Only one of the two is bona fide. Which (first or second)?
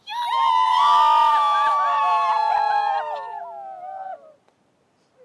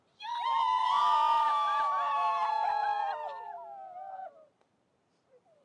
first